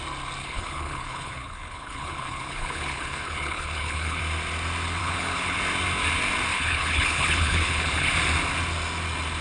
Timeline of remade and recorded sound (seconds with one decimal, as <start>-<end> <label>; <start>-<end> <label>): 0.0-0.4 recorded; 0.4-4.2 remade; 4.2-5.0 recorded; 5.0-5.6 remade; 5.6-6.5 recorded; 6.5-8.1 remade; 8.1-9.4 recorded